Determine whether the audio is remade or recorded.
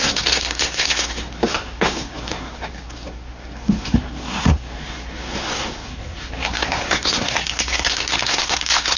remade